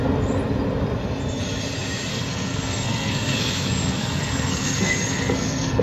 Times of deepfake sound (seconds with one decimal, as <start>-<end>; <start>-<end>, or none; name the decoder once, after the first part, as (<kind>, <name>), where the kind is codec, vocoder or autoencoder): 2.1-5.8 (codec, SNAC)